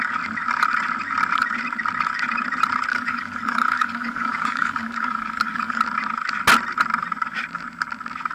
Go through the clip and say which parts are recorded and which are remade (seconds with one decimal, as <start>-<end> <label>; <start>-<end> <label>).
0.0-2.9 recorded; 2.9-5.8 remade; 5.8-8.3 recorded